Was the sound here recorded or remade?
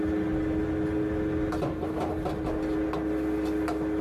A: recorded